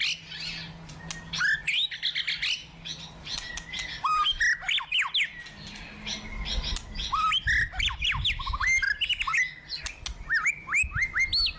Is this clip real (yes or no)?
yes